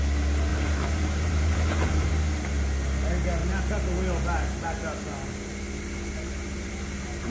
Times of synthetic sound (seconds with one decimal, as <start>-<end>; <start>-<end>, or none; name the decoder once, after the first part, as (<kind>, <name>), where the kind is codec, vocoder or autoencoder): 0.5-2.1 (vocoder, BigVGAN v2)